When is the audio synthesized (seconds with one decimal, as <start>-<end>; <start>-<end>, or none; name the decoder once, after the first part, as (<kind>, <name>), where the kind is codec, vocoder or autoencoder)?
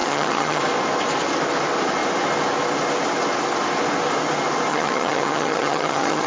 0.0-0.6 (vocoder, HiFi-GAN); 4.7-6.3